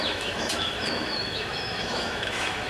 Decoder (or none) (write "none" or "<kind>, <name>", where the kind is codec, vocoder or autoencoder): autoencoder, DAC-VAE